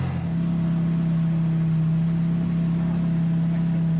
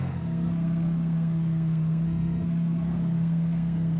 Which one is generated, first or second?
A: second